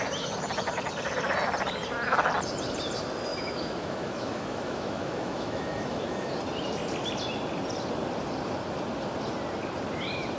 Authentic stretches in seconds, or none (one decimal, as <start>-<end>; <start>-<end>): 0.0-3.3; 6.4-10.4